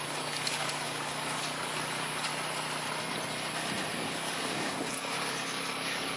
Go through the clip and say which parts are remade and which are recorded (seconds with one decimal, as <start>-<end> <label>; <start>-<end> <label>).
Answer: 0.0-2.3 remade; 2.3-3.9 recorded; 3.9-6.2 remade